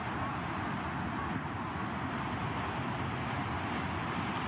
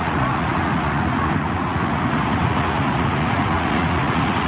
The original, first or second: first